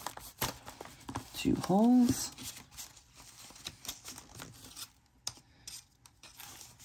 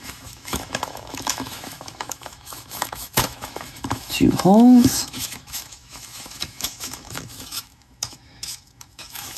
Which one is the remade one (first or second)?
second